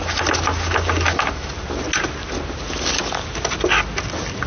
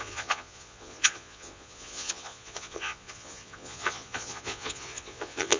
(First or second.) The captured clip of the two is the first